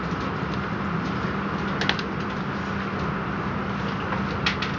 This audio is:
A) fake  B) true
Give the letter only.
B